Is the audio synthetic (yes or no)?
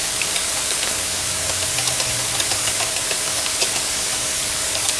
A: yes